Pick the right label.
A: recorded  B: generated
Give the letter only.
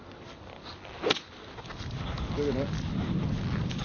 A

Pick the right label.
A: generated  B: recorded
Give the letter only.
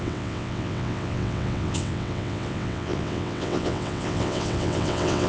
A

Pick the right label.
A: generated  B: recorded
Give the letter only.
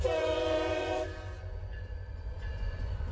A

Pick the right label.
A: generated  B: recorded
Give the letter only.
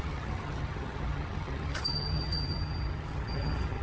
A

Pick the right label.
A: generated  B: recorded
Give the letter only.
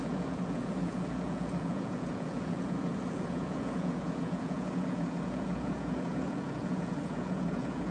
A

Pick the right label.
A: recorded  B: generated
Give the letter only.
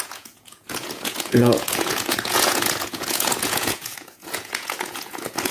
B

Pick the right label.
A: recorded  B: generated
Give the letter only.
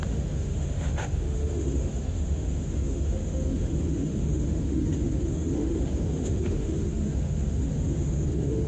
B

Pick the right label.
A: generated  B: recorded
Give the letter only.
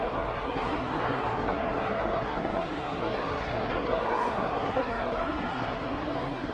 A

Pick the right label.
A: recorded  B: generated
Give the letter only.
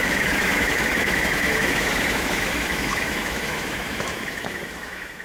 B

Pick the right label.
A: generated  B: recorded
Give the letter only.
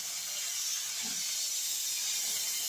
B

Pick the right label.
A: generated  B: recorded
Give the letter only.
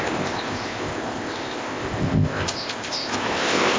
A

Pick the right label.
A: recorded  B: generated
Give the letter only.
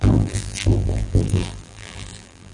B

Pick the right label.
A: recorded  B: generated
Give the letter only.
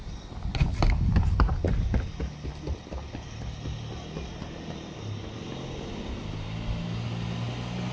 A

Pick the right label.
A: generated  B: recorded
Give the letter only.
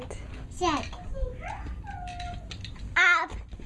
B